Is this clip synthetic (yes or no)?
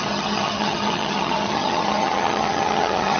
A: yes